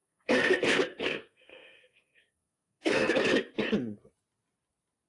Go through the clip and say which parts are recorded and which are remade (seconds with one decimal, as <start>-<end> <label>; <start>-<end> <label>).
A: 0.0-3.1 remade; 3.1-5.1 recorded